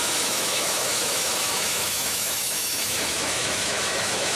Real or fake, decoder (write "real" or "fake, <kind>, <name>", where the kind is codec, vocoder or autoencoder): fake, autoencoder, DAC-VAE